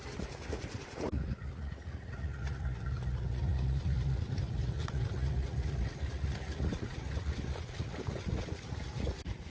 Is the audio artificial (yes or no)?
yes